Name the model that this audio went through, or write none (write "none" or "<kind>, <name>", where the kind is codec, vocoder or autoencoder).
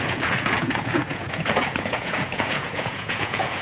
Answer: vocoder, Vocos